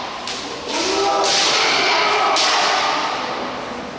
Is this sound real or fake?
real